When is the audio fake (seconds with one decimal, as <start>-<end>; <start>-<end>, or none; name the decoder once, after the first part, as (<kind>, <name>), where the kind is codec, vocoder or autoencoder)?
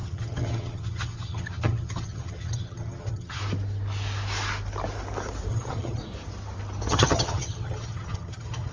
0.0-3.4 (vocoder, HiFi-GAN); 5.5-6.0; 6.9-8.7